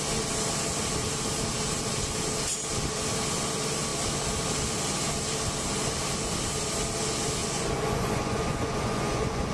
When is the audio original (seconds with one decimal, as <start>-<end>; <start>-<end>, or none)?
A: 0.0-7.4

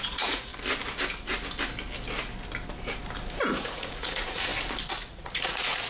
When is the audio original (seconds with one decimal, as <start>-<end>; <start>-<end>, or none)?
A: 0.5-3.5; 4.5-5.1

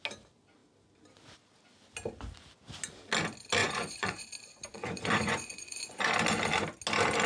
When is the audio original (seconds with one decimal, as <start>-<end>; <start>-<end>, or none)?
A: 0.0-3.6; 4.2-4.7; 6.1-7.3

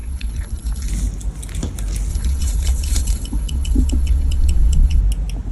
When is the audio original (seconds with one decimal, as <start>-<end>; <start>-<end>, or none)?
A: 0.9-2.1; 5.0-5.5

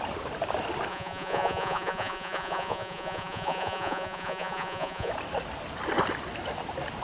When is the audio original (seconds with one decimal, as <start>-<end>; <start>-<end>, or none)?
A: 0.0-0.9; 5.1-7.0

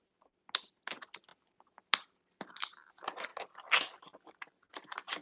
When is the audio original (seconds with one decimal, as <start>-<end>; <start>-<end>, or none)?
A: 0.0-5.2

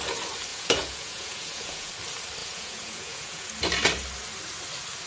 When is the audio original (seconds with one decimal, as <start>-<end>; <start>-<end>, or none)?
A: 0.0-0.5; 1.9-2.4; 3.5-5.1

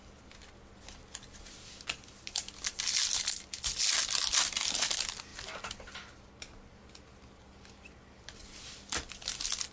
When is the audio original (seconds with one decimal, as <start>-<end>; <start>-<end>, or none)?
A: 0.0-9.7